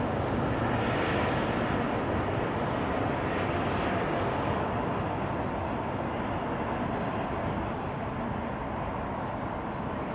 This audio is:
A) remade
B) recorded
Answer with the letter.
B